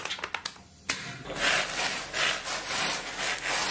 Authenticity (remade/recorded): recorded